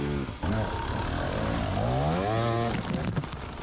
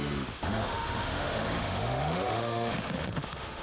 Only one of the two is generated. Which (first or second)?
second